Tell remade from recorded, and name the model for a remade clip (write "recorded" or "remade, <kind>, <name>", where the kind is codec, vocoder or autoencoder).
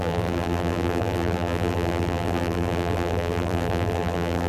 remade, vocoder, BigVGAN v2